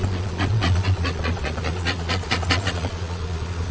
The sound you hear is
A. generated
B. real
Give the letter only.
A